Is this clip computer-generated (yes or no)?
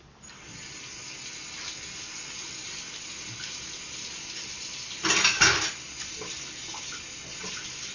no